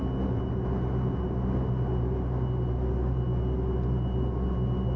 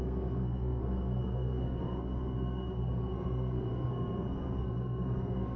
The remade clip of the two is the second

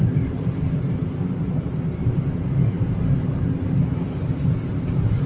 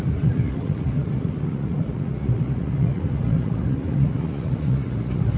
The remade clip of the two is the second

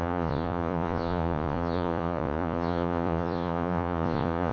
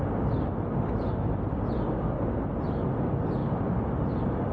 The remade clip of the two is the first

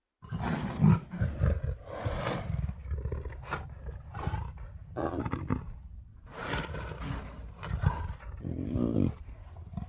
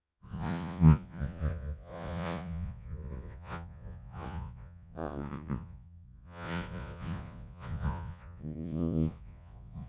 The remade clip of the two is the second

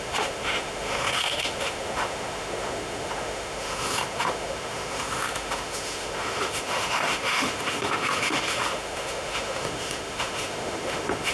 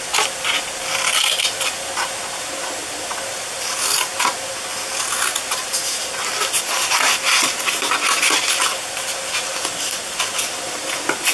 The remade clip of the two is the first